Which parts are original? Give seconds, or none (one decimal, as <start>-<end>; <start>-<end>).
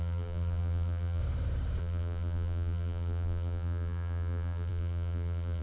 1.2-1.8